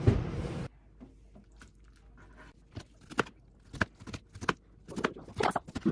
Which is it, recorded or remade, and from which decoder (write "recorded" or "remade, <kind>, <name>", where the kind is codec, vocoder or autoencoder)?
recorded